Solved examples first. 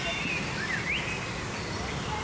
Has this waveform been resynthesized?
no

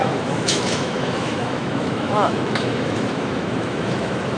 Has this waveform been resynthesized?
yes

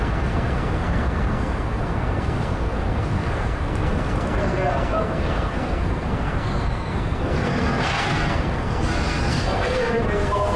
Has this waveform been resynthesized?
yes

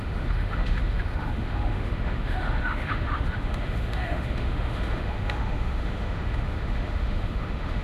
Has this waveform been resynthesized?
yes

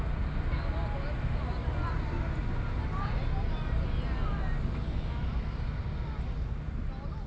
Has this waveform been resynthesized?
no